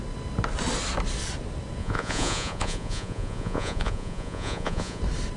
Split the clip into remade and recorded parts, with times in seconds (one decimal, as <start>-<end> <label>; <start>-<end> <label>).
0.0-1.8 recorded; 1.8-5.0 remade; 5.0-5.4 recorded